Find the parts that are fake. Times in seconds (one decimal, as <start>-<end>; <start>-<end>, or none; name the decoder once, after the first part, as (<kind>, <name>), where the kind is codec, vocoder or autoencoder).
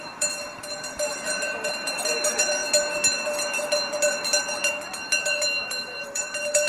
0.0-2.6 (vocoder, BigVGAN v2); 5.6-6.7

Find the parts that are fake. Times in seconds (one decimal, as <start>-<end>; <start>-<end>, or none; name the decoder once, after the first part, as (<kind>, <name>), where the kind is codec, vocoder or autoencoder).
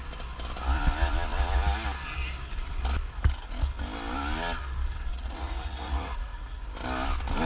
5.1-6.6 (vocoder, Vocos)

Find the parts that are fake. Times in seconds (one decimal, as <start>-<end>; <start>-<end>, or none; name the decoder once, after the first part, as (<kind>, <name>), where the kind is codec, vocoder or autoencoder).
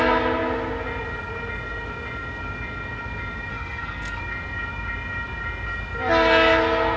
3.5-4.2 (codec, SNAC)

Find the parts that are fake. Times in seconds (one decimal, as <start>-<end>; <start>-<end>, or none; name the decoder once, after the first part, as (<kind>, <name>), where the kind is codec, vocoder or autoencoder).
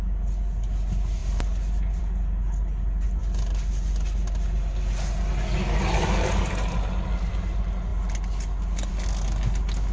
none